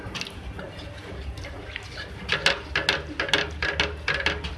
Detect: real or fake real